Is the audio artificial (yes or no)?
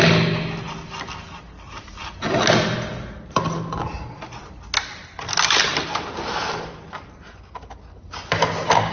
no